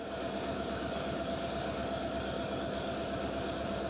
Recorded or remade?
remade